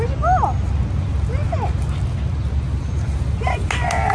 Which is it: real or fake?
real